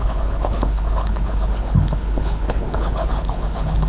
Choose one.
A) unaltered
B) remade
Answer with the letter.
B